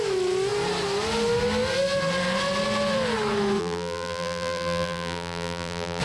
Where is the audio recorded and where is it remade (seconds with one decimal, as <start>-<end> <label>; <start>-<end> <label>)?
0.0-3.6 recorded; 3.6-6.0 remade